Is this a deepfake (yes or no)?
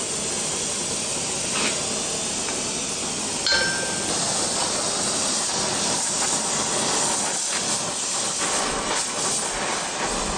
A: no